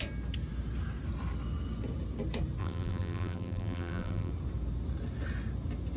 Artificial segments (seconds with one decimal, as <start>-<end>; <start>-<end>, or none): 2.6-4.3